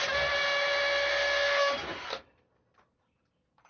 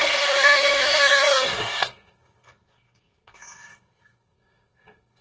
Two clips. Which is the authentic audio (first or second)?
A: first